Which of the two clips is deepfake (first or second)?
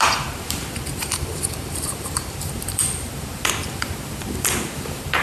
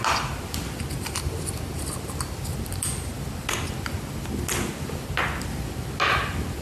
first